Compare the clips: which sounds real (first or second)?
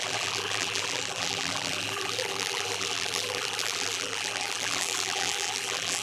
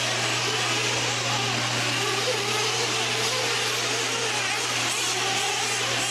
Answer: second